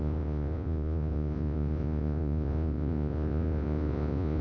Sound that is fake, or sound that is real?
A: fake